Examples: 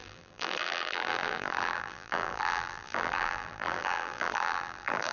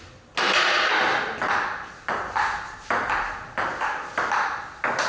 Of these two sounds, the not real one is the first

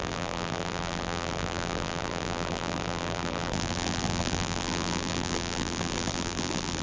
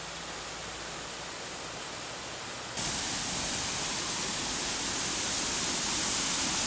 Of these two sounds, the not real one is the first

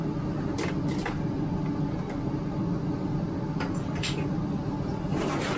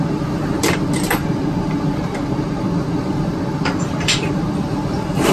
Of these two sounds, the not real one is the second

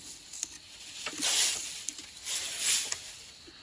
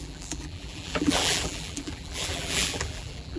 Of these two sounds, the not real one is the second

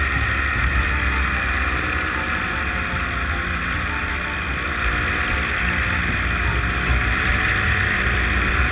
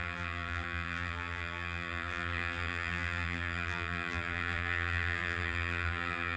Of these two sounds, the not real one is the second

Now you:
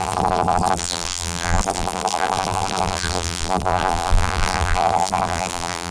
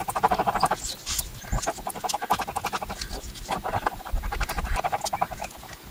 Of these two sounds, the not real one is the first